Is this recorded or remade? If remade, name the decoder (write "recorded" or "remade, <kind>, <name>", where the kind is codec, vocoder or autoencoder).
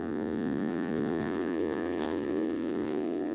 remade, vocoder, Vocos